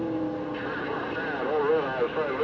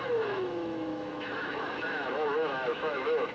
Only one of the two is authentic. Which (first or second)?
first